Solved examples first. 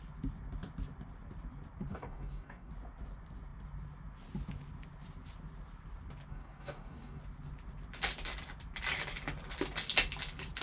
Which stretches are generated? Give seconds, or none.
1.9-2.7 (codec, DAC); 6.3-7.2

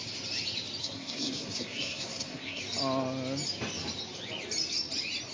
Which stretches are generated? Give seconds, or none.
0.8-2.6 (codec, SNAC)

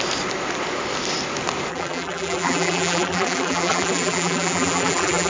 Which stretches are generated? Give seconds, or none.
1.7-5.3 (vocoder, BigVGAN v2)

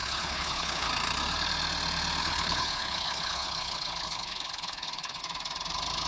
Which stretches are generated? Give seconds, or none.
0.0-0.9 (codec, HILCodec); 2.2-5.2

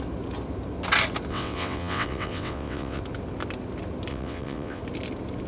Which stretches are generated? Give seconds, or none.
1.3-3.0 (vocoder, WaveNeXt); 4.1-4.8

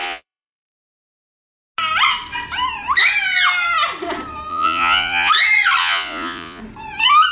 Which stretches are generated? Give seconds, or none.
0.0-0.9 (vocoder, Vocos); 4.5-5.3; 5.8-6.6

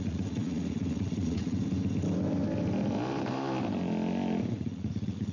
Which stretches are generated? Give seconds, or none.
0.0-1.6 (vocoder, Vocos); 4.5-5.3